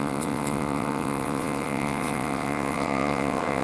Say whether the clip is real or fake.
fake